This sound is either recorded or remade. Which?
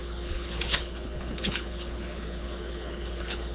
remade